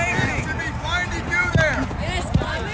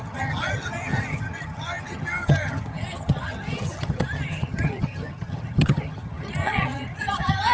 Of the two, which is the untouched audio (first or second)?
first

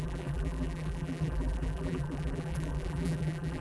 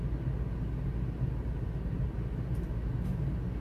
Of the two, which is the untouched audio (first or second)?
second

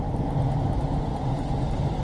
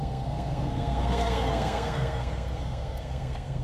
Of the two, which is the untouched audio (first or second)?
first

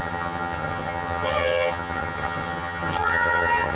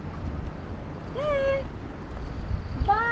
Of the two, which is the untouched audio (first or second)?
second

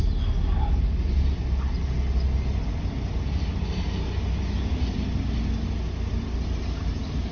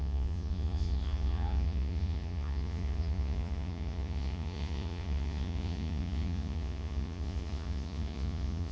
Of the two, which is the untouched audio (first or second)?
first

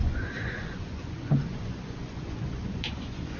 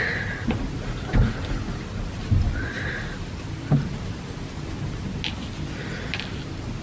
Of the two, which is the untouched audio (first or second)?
second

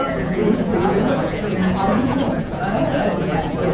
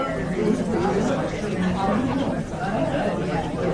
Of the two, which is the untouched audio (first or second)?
second